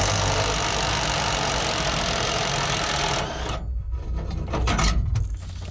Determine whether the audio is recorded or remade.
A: recorded